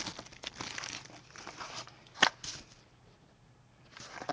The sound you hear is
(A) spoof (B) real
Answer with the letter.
B